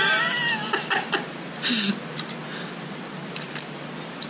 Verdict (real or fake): real